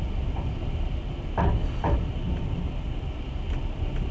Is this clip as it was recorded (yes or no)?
yes